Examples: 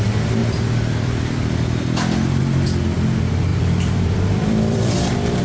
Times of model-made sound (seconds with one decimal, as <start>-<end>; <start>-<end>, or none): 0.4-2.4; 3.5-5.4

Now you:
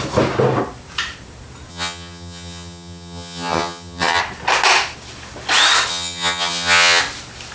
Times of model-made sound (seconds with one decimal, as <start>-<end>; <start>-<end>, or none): 1.7-4.2; 5.9-7.0

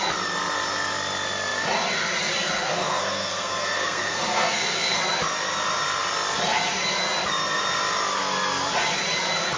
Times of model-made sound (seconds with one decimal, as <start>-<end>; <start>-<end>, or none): 2.7-5.0